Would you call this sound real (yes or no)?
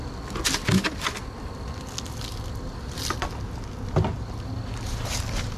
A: yes